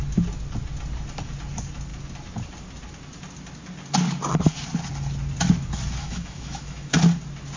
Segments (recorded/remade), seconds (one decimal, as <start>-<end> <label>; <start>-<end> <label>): 0.0-6.0 recorded; 6.0-6.9 remade; 6.9-7.6 recorded